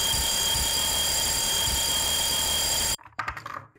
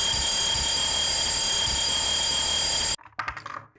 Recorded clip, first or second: second